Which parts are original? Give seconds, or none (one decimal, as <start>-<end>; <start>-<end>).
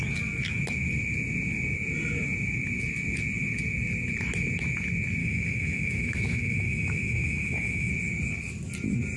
0.0-5.2; 7.9-9.2